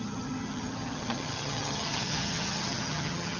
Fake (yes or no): yes